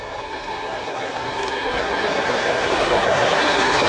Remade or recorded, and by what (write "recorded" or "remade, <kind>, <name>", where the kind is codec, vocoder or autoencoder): remade, codec, SNAC